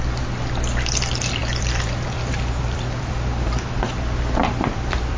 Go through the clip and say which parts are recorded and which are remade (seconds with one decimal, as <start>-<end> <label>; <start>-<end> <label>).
0.0-1.4 recorded; 1.4-3.7 remade; 3.7-4.4 recorded; 4.4-5.2 remade